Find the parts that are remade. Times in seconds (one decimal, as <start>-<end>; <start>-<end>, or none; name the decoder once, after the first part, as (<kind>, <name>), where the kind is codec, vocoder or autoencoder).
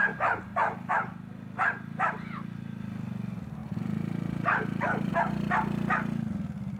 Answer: 3.6-5.1 (vocoder, BigVGAN v2)